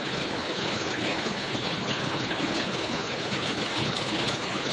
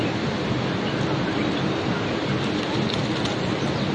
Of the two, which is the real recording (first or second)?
second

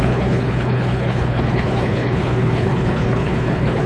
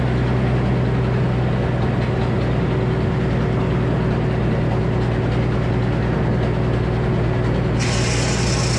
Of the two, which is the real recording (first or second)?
second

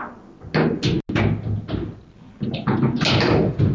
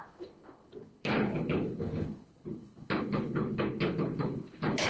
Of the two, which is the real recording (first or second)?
first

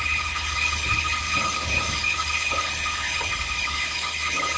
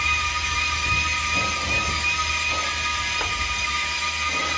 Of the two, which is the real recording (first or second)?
second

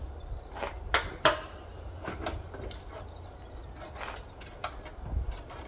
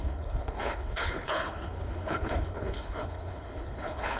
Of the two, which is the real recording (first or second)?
first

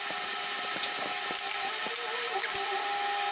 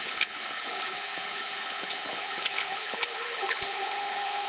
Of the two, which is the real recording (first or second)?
first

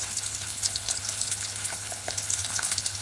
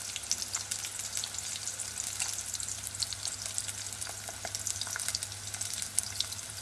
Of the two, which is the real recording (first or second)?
second